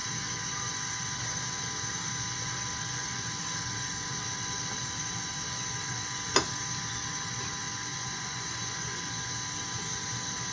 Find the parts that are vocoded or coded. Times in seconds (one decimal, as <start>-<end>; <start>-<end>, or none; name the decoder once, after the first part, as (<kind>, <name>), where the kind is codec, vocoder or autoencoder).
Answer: 7.9-9.0 (vocoder, Vocos)